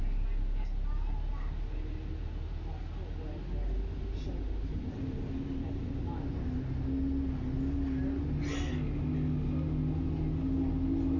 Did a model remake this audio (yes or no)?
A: no